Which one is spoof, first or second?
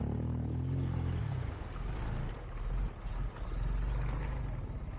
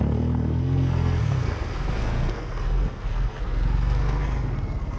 second